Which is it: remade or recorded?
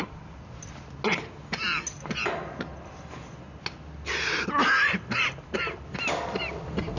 recorded